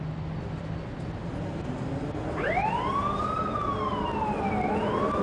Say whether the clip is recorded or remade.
recorded